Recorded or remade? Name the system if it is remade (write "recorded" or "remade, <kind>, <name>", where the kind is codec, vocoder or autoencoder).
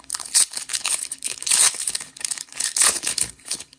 remade, codec, HILCodec